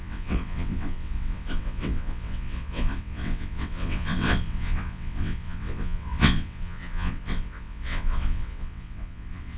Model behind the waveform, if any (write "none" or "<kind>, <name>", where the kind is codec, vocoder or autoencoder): vocoder, WaveNeXt